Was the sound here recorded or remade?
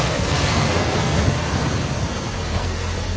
remade